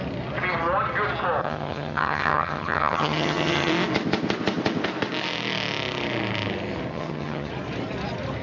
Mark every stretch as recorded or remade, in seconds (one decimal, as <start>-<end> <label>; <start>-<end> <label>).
0.0-1.4 recorded; 1.4-3.7 remade; 3.7-6.9 recorded; 6.9-7.5 remade; 7.5-8.4 recorded